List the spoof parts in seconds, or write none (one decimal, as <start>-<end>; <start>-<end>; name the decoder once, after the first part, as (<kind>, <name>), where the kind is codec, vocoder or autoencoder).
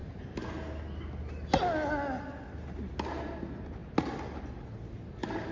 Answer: none